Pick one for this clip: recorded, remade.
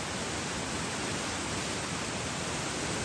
recorded